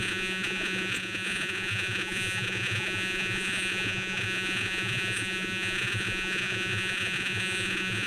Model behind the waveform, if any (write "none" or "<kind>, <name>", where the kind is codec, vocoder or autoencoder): vocoder, Vocos